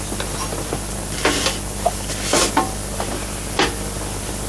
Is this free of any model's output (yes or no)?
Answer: yes